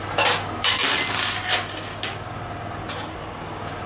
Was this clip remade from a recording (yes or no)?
no